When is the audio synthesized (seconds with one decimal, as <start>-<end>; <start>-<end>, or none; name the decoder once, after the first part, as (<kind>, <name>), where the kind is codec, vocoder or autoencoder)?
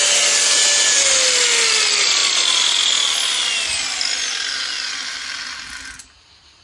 none